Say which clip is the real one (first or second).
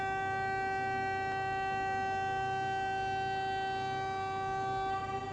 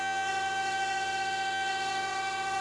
first